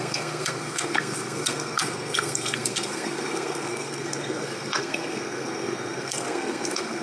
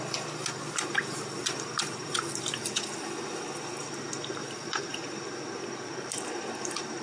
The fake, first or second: first